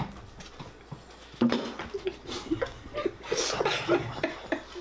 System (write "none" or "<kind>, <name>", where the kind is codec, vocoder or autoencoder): none